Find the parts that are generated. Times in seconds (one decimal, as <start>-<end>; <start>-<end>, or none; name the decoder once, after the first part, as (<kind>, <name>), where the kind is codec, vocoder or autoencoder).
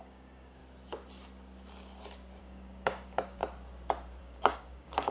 0.0-0.6 (codec, DAC); 2.4-3.4; 4.2-5.1